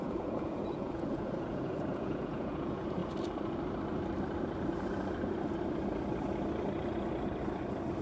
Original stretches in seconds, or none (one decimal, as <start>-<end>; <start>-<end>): 3.0-8.0